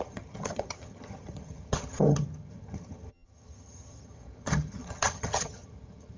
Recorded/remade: remade